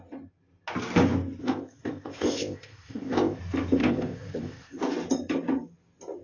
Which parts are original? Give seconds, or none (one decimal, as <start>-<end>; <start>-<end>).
0.0-1.4; 3.4-3.8; 4.8-6.2